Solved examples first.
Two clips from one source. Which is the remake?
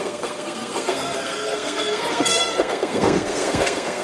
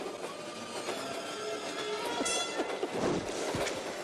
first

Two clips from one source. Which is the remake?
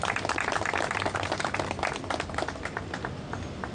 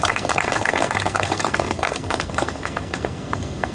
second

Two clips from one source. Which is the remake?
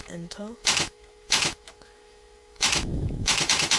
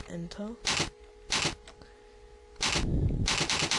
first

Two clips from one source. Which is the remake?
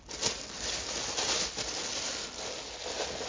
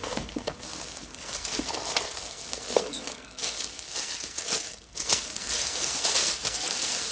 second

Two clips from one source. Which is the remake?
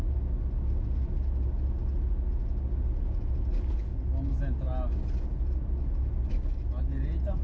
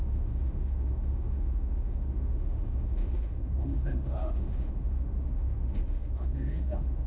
second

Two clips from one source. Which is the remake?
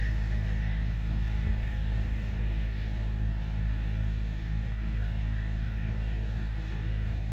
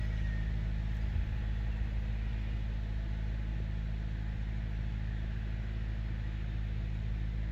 first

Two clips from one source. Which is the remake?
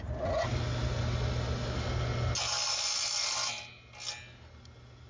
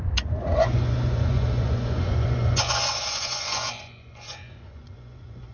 second